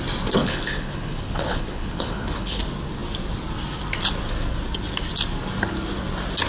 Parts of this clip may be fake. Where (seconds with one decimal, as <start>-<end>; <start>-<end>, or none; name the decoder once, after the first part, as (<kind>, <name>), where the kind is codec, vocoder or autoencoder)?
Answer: 0.4-2.6 (codec, HILCodec)